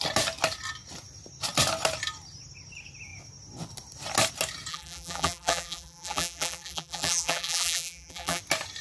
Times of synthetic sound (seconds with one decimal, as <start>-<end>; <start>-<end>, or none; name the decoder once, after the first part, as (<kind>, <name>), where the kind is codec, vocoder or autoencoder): 4.7-8.4 (vocoder, BigVGAN v2)